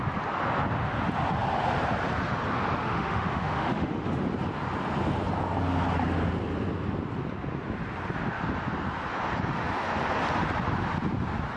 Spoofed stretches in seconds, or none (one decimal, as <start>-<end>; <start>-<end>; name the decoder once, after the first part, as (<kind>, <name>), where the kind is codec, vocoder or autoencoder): 2.8-4.2 (autoencoder, DAC-VAE)